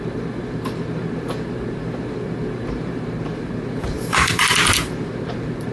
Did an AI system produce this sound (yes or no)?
yes